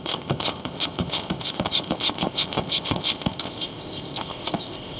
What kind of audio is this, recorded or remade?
remade